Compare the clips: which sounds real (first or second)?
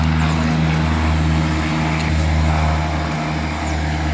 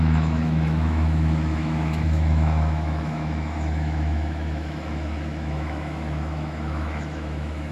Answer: first